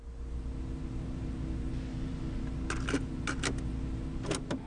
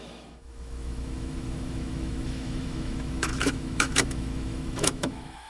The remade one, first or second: second